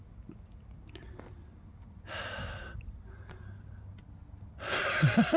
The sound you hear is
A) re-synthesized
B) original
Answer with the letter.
B